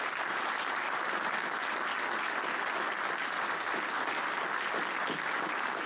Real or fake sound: real